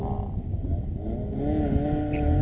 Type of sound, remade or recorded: recorded